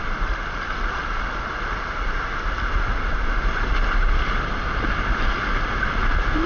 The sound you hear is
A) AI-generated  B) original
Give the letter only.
B